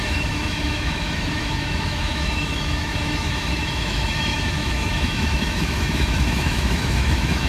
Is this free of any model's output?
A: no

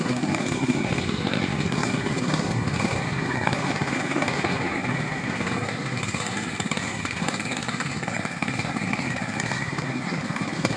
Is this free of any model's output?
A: no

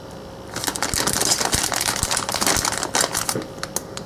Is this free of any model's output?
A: yes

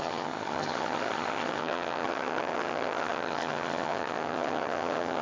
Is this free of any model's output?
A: no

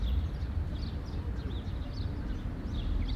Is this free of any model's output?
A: yes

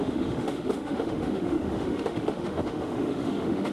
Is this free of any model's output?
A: no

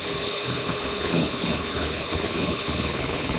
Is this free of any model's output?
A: no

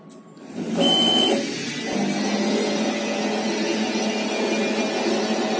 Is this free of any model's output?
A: yes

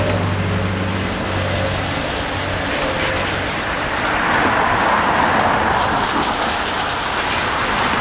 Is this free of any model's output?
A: yes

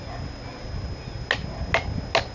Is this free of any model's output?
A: yes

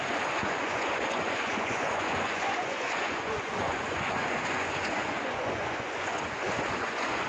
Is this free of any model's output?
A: no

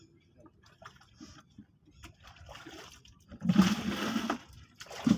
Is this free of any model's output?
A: yes